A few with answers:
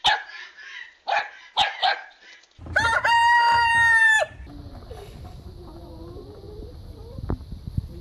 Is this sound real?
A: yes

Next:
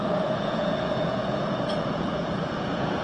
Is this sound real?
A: no